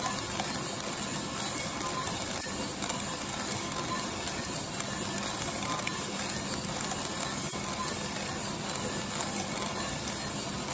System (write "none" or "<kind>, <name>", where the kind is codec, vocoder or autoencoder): none